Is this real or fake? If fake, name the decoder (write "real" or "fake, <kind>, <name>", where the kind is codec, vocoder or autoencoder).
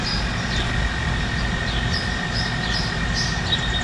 real